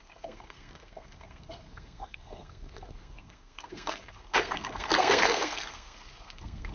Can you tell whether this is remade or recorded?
remade